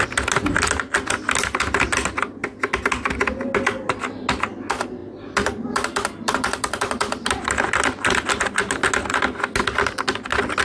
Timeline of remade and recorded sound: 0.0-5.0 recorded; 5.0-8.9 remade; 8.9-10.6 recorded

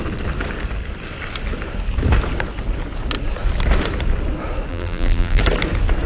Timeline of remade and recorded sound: 0.0-4.7 recorded; 4.7-5.4 remade; 5.4-6.1 recorded

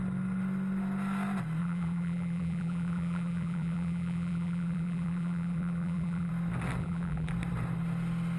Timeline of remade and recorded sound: 0.0-1.6 recorded; 1.6-6.3 remade; 6.3-6.8 recorded; 6.8-7.3 remade; 7.3-8.4 recorded

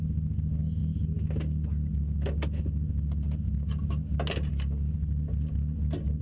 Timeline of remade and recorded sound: 0.0-6.2 recorded

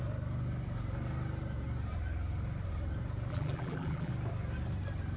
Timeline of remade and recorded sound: 0.0-3.3 recorded; 3.3-4.1 remade; 4.1-5.2 recorded